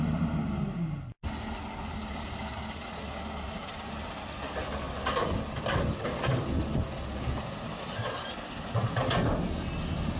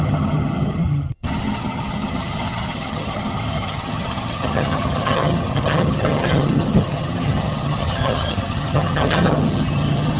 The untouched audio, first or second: first